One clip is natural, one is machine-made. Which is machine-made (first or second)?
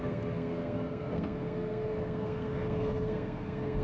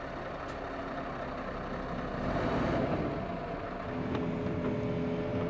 first